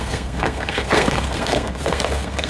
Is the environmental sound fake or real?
fake